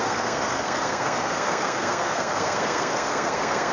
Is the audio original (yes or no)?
no